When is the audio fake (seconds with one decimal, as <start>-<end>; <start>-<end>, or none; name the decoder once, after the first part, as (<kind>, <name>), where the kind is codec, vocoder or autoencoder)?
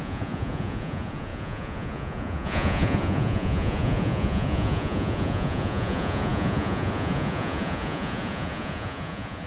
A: 0.0-9.5 (vocoder, Vocos)